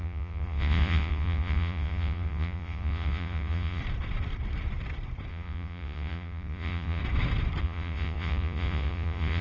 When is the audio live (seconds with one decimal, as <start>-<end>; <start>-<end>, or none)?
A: 3.8-5.3; 7.0-7.6